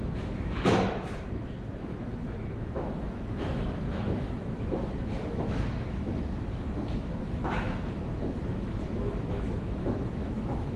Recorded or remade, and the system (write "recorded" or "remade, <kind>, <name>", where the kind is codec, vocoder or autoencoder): remade, autoencoder, DAC-VAE